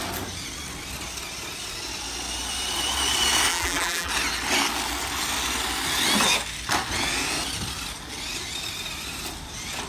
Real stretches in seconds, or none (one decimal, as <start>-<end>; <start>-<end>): 0.0-3.5; 4.1-9.9